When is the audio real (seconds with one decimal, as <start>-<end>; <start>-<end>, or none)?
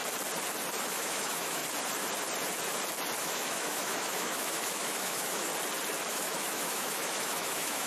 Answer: 0.0-0.8; 1.6-3.2; 5.5-6.1